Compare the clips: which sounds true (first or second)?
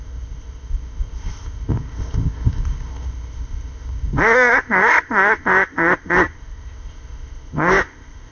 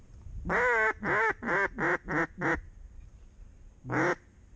second